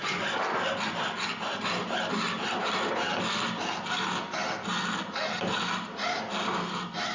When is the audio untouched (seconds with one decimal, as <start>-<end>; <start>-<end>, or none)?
0.0-7.1